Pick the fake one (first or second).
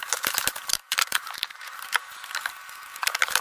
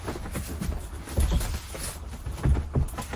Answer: first